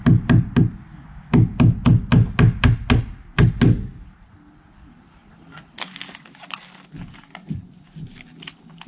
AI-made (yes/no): no